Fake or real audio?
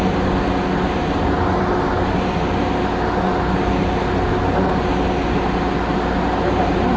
real